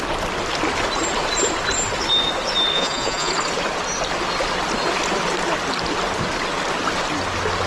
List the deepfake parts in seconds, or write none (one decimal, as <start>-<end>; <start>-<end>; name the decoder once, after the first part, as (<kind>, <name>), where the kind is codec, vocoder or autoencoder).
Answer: 2.7-3.3 (vocoder, Vocos)